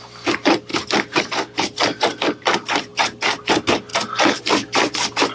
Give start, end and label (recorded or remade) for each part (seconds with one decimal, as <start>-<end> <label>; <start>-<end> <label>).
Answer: 0.0-5.3 recorded